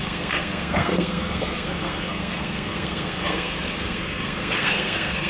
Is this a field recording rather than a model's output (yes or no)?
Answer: no